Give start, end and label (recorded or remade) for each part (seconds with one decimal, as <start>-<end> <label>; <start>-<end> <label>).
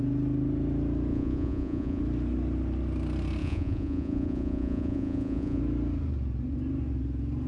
0.0-1.1 recorded; 1.1-2.0 remade; 2.0-3.4 recorded; 3.4-5.6 remade; 5.6-7.5 recorded